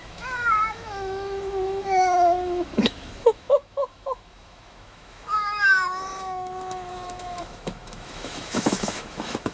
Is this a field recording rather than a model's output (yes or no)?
no